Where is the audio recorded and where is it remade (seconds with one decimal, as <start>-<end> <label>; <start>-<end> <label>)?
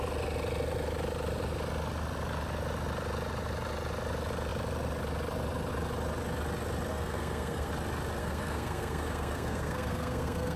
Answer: 0.0-6.9 recorded; 6.9-7.7 remade; 7.7-8.2 recorded; 8.2-10.6 remade